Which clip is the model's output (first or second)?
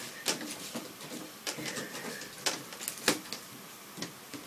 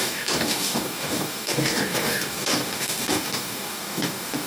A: second